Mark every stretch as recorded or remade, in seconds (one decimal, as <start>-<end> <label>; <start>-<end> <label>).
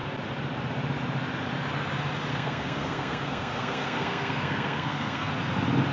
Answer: 0.0-2.3 recorded; 2.3-5.3 remade; 5.3-5.9 recorded